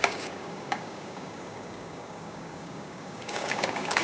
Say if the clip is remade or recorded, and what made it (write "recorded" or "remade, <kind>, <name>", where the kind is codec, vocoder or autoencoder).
remade, codec, DAC